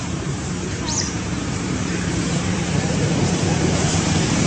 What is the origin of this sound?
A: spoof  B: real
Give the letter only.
A